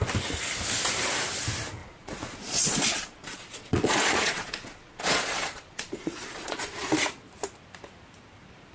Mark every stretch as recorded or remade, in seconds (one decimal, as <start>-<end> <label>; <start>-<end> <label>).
0.0-1.8 recorded; 1.8-6.9 remade; 6.9-8.7 recorded